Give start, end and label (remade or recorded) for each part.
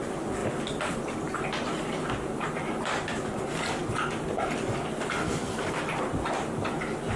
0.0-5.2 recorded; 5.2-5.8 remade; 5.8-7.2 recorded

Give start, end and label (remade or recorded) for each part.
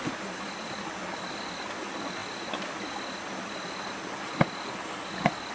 0.0-5.5 recorded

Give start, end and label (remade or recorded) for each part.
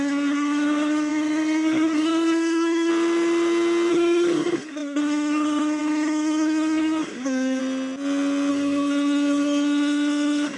0.0-2.9 remade; 2.9-3.9 recorded; 3.9-7.6 remade; 7.6-8.5 recorded; 8.5-10.6 remade